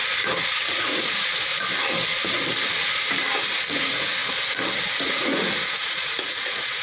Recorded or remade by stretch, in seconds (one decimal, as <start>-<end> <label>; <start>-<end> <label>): 0.0-0.7 recorded; 0.7-1.5 remade; 1.5-3.7 recorded; 3.7-4.2 remade; 4.2-4.9 recorded; 4.9-6.8 remade